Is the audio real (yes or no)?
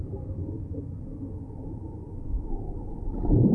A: yes